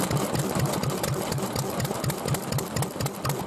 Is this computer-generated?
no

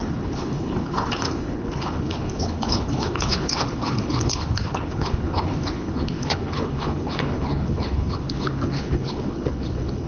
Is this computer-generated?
yes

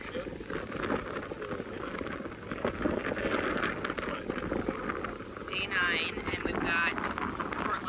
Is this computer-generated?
no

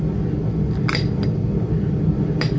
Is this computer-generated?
no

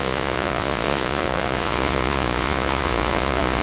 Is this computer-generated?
yes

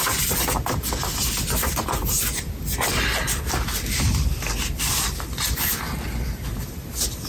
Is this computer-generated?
no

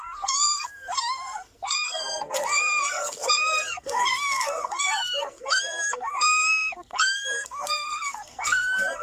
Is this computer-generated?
yes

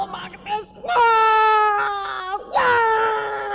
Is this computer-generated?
no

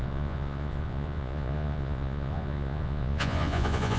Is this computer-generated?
yes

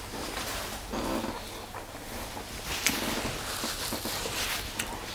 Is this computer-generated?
no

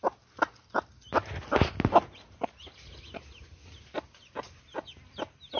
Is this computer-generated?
no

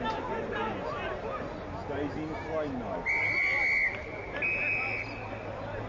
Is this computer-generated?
no